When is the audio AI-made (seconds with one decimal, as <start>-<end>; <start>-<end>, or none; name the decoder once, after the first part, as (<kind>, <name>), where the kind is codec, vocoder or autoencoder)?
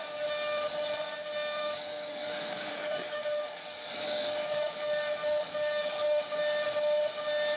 1.6-6.2 (codec, DAC)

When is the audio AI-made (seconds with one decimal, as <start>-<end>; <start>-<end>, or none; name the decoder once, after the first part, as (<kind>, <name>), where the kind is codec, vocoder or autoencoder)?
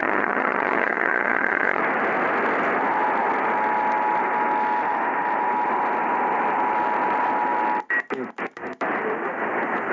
0.0-1.8 (vocoder, HiFi-GAN)